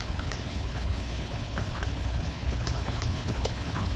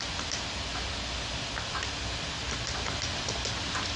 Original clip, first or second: second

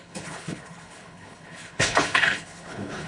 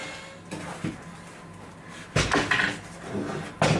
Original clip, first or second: second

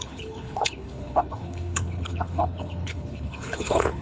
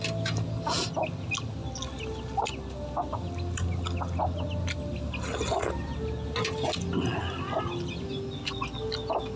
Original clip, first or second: second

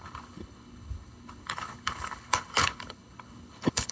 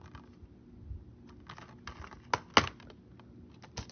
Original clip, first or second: second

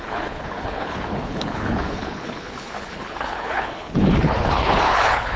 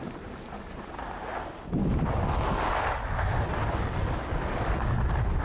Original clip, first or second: second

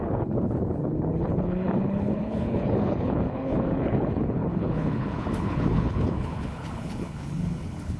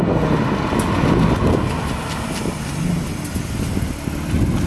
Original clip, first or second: second